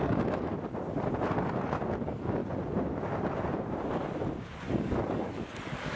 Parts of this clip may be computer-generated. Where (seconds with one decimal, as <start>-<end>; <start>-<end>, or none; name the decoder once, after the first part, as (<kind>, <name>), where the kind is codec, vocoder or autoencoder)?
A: 0.0-0.5 (codec, DAC); 2.0-2.4; 4.7-6.0